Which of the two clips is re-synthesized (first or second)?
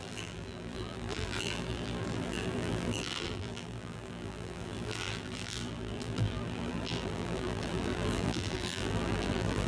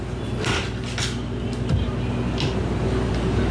first